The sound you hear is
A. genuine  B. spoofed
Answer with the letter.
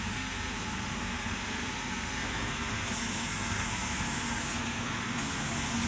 B